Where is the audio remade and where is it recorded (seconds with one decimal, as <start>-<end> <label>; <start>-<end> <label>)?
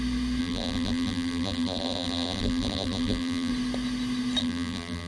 0.0-0.4 recorded; 0.4-3.5 remade; 3.5-4.4 recorded; 4.4-5.1 remade